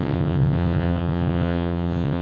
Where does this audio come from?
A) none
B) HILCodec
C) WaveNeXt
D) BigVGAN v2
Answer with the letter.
C